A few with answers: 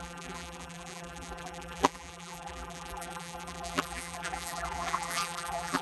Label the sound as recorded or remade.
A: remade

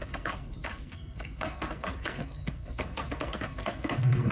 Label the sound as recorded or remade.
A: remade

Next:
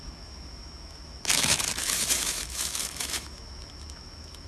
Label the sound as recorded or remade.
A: remade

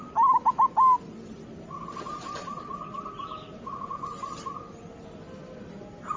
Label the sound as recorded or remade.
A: recorded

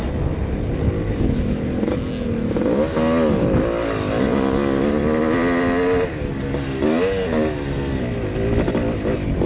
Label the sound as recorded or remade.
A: recorded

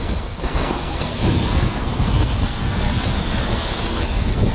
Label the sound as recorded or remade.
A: remade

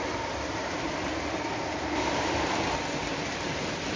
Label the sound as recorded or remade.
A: recorded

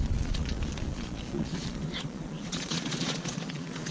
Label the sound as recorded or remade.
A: remade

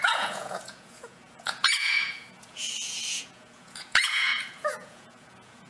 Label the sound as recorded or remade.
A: remade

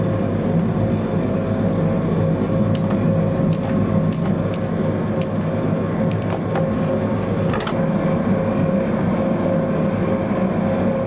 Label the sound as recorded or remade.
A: recorded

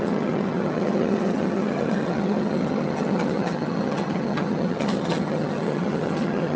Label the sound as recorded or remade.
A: remade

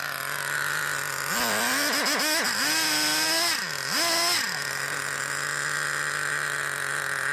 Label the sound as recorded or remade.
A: recorded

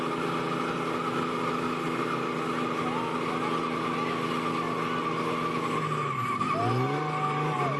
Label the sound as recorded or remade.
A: recorded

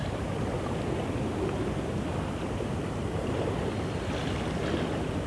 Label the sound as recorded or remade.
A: recorded